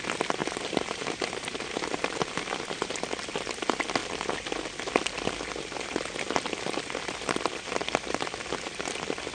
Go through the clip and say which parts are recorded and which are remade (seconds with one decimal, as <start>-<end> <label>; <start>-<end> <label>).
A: 0.0-0.4 recorded; 0.4-2.9 remade; 2.9-9.3 recorded